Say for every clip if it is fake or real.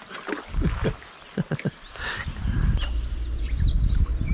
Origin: real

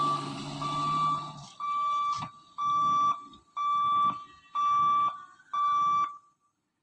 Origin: real